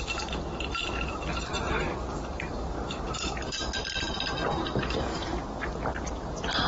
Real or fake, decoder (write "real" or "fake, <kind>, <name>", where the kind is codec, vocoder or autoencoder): fake, vocoder, BigVGAN v2